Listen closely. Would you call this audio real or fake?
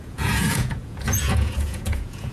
fake